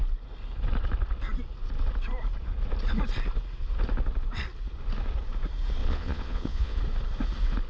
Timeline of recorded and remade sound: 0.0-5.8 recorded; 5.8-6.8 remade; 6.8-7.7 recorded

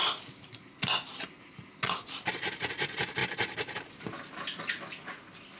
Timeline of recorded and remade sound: 0.0-5.6 recorded

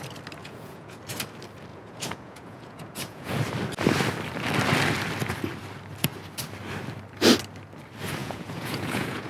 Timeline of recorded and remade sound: 0.0-0.4 recorded; 0.4-1.0 remade; 1.0-1.7 recorded; 1.7-3.4 remade; 3.4-8.2 recorded; 8.2-9.3 remade